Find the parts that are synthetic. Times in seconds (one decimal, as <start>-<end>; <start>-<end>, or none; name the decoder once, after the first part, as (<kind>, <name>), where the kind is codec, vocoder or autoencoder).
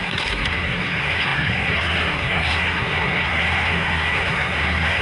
0.0-5.0 (codec, SNAC)